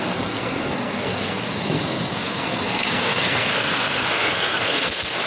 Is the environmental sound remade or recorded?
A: remade